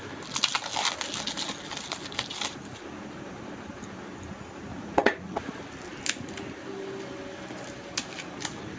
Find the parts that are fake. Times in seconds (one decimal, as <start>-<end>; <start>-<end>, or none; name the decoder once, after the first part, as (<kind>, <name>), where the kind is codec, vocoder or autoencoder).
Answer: 4.7-5.6 (vocoder, Vocos)